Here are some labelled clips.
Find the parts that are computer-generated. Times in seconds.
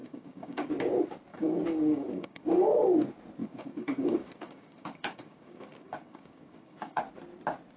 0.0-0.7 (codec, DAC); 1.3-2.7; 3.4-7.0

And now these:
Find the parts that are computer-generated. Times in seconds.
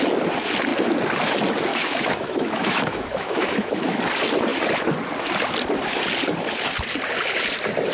1.7-4.0 (autoencoder, DAC-VAE)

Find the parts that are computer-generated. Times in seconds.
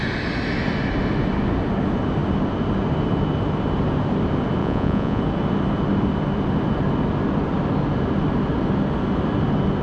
4.6-5.2 (vocoder, Vocos)